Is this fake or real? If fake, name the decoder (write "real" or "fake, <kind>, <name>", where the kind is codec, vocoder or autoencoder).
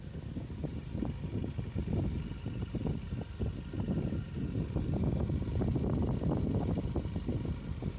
real